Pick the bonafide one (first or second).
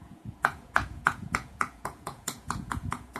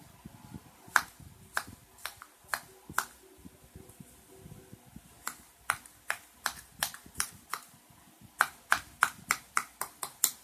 second